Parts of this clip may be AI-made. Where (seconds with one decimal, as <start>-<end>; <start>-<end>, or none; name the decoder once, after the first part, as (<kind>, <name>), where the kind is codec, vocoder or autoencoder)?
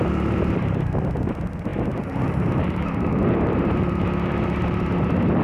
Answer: none